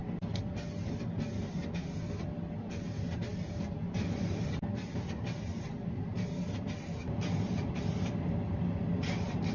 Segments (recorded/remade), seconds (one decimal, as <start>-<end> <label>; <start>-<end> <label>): 0.0-3.3 recorded; 3.3-7.8 remade; 7.8-9.5 recorded